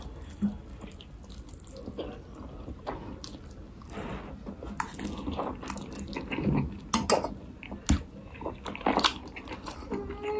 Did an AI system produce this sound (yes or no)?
no